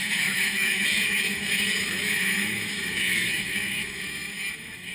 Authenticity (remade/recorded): remade